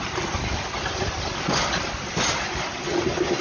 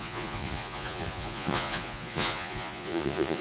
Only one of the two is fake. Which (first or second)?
second